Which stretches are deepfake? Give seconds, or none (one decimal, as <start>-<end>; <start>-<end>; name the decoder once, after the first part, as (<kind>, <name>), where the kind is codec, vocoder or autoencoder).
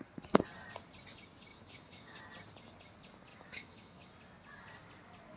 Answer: 1.5-2.2 (autoencoder, DAC-VAE); 3.3-4.1